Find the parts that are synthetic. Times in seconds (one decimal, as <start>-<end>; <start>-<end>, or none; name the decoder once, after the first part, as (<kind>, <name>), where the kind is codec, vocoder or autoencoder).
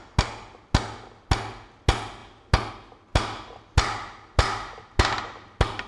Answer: none